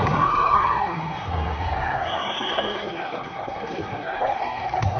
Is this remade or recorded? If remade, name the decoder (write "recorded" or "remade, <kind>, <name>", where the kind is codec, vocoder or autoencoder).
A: remade, codec, SNAC